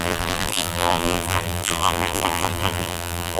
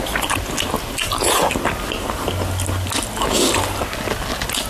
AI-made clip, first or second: first